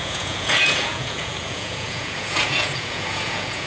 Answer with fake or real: fake